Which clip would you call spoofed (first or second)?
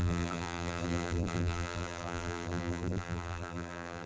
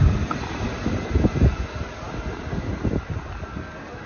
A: first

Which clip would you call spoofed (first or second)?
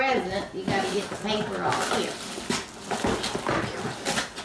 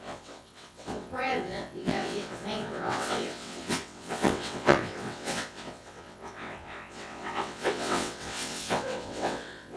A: second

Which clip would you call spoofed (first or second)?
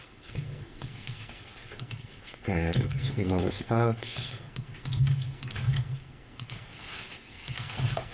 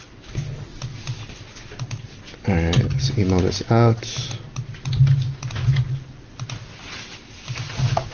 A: first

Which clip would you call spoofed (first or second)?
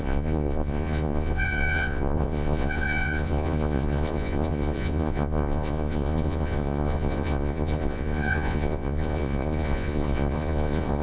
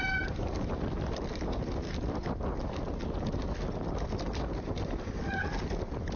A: first